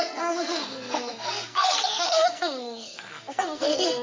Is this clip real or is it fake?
fake